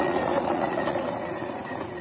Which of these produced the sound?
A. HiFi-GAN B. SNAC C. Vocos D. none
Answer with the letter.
C